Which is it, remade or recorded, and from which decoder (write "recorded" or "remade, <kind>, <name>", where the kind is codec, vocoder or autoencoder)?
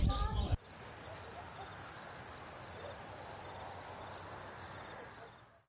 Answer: recorded